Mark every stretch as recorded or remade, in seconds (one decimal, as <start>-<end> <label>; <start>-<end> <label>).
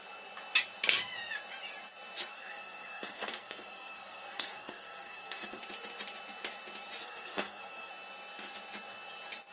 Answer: 0.0-2.3 recorded; 2.3-5.6 remade; 5.6-7.0 recorded; 7.0-7.9 remade; 7.9-9.5 recorded